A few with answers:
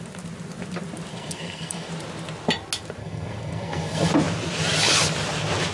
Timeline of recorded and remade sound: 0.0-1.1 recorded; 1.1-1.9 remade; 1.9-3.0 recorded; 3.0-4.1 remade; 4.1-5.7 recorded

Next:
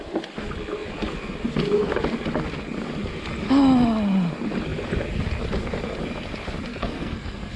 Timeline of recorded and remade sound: 0.0-6.7 recorded; 6.7-7.6 remade

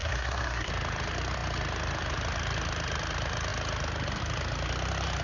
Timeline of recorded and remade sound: 0.0-0.7 remade; 0.7-5.2 recorded

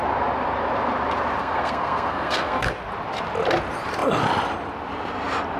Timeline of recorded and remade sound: 0.0-1.4 recorded; 1.4-2.7 remade; 2.7-5.6 recorded

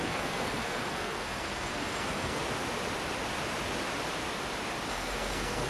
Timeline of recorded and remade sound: 0.0-2.4 remade; 2.4-4.9 recorded; 4.9-5.7 remade

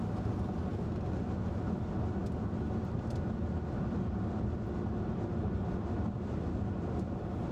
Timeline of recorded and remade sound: 0.0-7.5 recorded

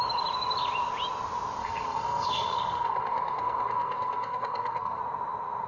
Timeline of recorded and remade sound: 0.0-1.6 recorded; 1.6-5.0 remade; 5.0-5.7 recorded

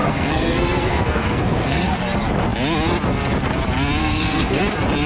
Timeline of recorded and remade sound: 0.0-2.0 remade; 2.0-4.0 recorded; 4.0-4.6 remade; 4.6-5.1 recorded